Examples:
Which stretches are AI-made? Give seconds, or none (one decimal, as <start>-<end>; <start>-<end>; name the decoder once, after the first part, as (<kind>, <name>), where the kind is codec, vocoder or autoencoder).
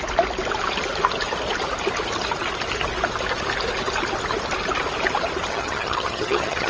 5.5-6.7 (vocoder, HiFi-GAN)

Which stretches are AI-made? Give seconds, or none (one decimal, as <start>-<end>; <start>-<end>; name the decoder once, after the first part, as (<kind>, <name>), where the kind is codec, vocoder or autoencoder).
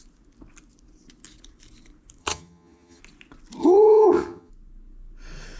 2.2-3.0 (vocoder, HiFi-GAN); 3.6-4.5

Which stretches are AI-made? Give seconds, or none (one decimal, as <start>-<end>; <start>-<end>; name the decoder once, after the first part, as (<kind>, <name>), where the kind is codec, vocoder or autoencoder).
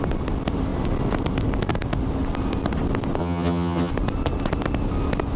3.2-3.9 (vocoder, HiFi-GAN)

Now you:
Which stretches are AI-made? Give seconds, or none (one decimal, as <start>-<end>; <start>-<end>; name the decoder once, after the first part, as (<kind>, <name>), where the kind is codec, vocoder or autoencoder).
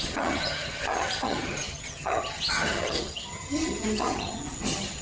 0.0-5.0 (vocoder, HiFi-GAN)